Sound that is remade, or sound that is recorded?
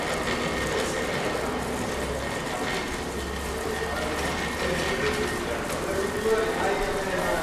recorded